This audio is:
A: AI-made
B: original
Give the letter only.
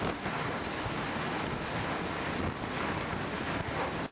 B